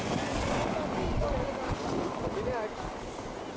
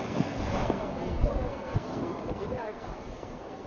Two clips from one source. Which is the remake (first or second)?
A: second